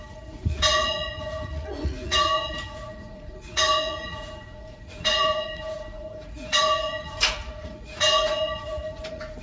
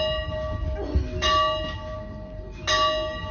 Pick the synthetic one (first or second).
first